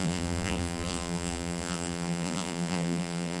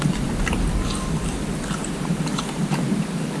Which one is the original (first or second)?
second